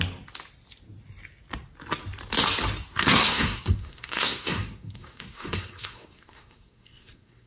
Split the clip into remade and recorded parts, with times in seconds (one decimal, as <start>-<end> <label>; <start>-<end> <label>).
0.0-2.9 recorded; 2.9-7.5 remade